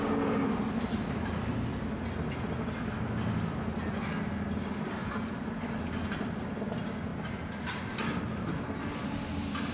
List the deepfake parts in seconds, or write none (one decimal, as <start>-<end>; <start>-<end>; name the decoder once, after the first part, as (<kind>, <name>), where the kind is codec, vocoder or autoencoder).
none